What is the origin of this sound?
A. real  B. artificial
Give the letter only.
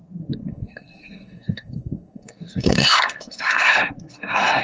B